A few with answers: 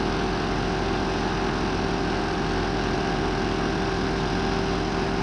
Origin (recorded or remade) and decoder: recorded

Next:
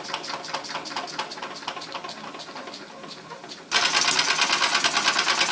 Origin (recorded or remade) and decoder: recorded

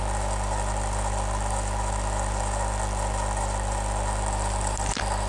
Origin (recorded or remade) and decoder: remade, vocoder, BigVGAN v2